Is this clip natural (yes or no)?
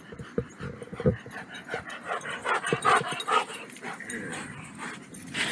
no